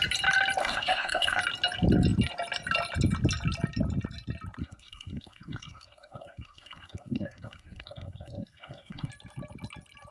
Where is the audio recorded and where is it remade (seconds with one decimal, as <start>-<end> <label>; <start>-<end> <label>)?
0.0-0.6 recorded; 0.6-1.4 remade; 1.4-4.6 recorded; 4.6-9.1 remade; 9.1-10.1 recorded